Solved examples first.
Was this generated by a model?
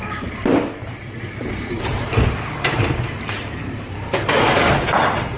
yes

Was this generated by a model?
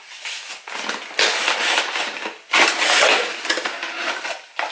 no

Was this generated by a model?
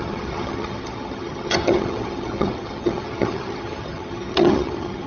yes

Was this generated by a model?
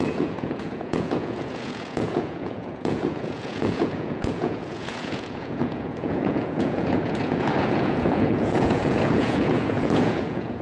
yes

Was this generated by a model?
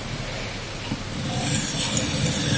no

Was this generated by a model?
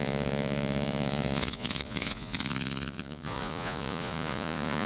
yes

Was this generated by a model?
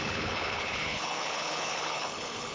yes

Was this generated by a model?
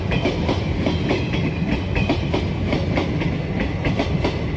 no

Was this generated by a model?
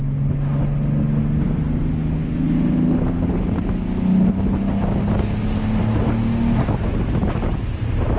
no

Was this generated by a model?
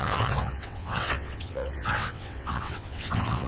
yes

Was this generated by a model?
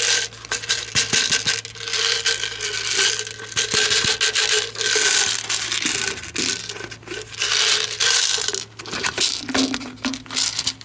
no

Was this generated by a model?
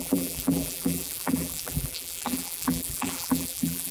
yes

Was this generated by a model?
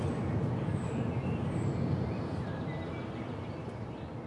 no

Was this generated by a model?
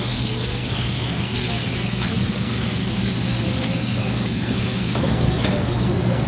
yes